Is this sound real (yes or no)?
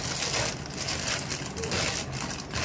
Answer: yes